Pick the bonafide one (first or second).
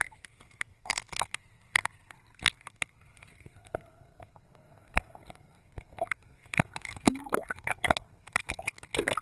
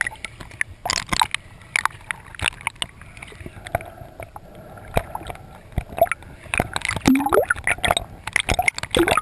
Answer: second